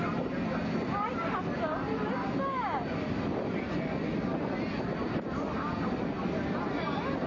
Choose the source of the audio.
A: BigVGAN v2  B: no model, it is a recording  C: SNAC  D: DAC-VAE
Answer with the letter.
B